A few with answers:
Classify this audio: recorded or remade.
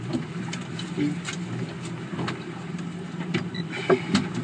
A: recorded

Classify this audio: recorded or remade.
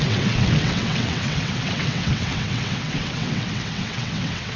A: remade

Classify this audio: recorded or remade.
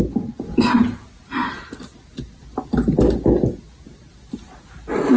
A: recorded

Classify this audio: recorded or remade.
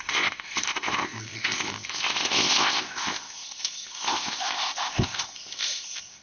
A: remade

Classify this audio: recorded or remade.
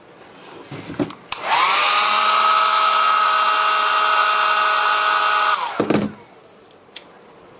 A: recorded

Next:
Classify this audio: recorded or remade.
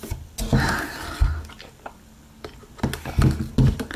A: recorded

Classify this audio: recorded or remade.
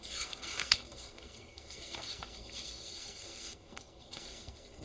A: remade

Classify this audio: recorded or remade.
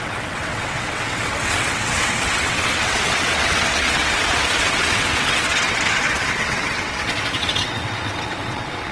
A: remade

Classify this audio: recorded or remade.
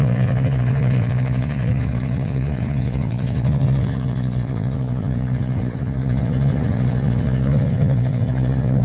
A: remade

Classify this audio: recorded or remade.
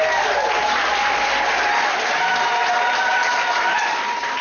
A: recorded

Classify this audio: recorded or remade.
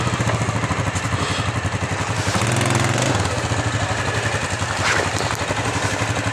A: recorded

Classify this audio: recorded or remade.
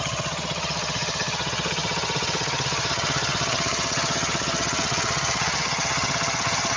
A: remade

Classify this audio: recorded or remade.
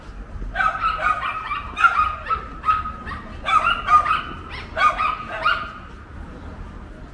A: recorded